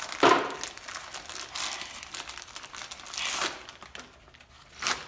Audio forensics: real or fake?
real